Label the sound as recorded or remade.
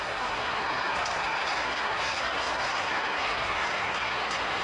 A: remade